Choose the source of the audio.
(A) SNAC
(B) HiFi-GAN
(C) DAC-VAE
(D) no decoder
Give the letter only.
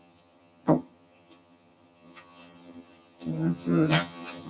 B